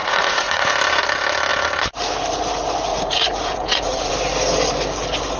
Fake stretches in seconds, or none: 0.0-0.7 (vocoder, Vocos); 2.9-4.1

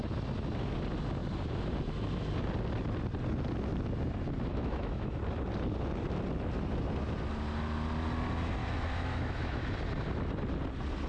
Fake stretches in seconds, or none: 4.5-5.2 (autoencoder, DAC-VAE); 8.6-9.7